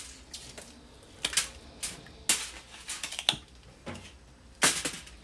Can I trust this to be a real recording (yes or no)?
yes